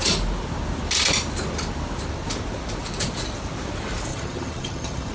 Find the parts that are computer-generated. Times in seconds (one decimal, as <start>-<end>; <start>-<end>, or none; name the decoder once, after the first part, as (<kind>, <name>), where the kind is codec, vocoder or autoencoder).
4.1-5.1 (vocoder, HiFi-GAN)